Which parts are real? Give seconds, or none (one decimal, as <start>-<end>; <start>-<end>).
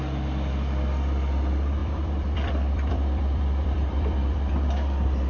0.0-1.8; 4.7-5.3